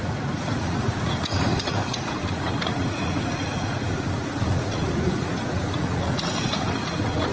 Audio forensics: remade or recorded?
remade